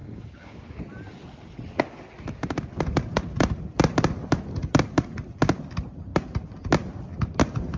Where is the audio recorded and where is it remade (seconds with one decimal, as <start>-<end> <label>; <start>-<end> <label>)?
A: 0.0-0.8 remade; 0.8-7.8 recorded